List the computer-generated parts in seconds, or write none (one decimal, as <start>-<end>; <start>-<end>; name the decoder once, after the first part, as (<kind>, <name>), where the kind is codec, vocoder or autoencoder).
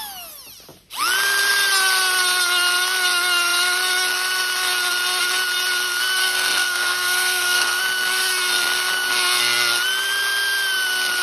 6.2-7.8 (codec, SNAC)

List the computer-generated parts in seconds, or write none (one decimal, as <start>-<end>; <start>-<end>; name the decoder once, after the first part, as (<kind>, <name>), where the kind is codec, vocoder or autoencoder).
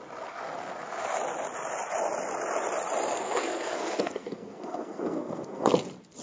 3.1-5.7 (codec, SNAC)